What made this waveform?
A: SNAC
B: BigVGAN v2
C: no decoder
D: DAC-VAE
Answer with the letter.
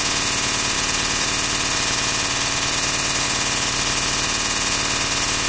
C